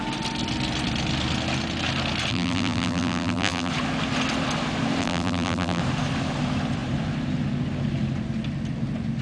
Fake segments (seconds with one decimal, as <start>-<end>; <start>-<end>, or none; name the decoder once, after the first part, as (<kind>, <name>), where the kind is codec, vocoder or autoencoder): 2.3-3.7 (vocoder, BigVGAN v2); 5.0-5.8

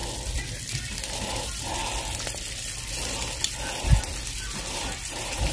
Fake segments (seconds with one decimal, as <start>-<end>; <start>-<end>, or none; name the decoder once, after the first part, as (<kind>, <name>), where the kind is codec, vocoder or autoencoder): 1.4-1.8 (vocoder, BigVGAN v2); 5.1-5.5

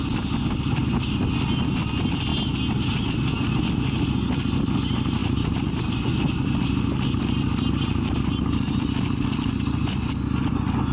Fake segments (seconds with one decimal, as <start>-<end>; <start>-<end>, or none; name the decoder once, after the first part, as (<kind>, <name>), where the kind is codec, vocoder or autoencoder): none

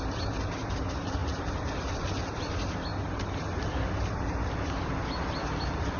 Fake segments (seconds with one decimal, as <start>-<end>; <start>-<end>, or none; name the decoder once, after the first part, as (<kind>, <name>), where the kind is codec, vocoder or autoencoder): none

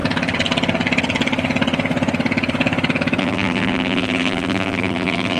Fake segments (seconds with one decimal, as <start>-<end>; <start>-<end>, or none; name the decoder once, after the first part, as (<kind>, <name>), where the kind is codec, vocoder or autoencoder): 3.2-5.4 (vocoder, BigVGAN v2)